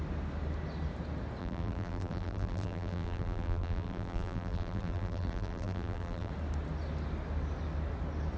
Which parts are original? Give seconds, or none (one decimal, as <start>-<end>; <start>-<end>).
0.0-1.4; 6.3-8.4